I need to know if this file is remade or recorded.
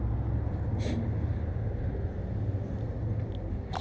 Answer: recorded